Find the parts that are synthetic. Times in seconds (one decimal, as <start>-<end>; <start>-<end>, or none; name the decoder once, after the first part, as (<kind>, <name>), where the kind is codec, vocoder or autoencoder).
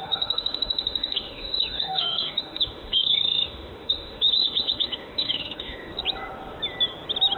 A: 0.0-5.9 (autoencoder, DAC-VAE)